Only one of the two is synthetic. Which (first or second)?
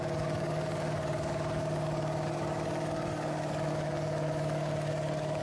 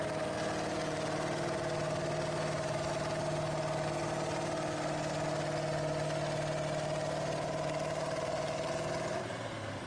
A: first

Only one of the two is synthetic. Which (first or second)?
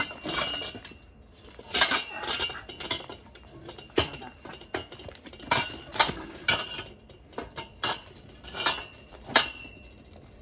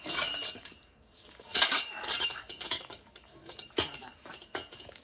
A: second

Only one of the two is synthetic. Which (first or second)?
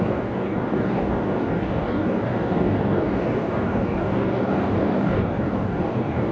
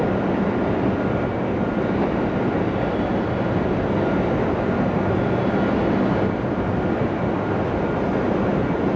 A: first